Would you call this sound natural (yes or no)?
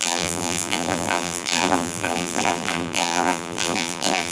no